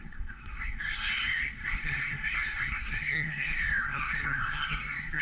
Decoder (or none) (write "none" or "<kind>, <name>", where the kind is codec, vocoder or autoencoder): codec, SNAC